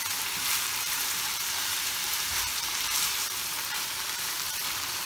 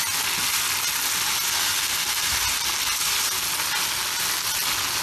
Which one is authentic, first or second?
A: second